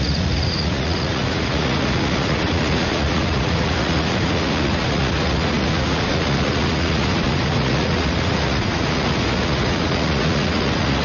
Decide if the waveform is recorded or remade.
remade